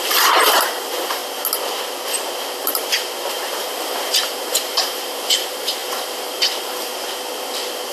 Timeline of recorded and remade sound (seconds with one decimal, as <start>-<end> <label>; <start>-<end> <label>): 0.0-1.2 remade; 1.2-3.3 recorded; 3.3-6.9 remade; 6.9-7.9 recorded